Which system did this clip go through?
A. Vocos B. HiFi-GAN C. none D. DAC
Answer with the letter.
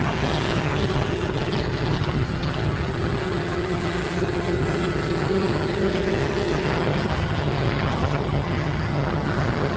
B